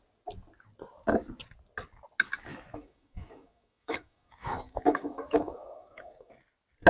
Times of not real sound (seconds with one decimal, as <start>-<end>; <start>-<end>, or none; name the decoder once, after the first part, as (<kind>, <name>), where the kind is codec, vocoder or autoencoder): 2.5-6.3 (autoencoder, DAC-VAE)